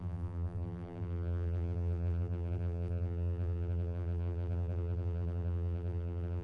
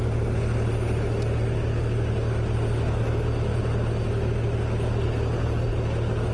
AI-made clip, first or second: first